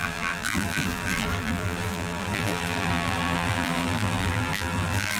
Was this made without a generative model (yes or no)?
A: no